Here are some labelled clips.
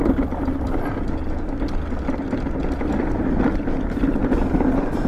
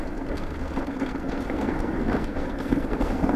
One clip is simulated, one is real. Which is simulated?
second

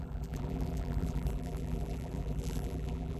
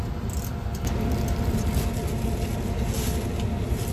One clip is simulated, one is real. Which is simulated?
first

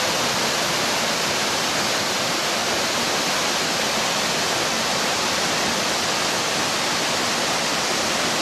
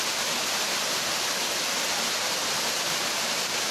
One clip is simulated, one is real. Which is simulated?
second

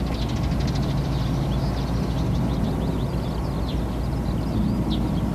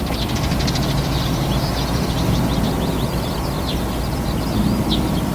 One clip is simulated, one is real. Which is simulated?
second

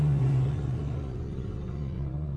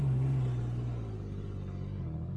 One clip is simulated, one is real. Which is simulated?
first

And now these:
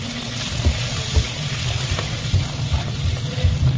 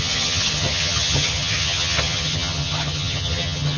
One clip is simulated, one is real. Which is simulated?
second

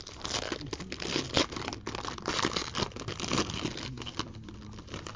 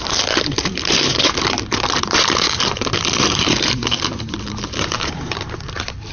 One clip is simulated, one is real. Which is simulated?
second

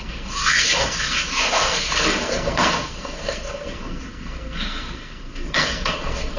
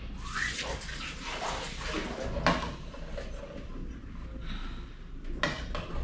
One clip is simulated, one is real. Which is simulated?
first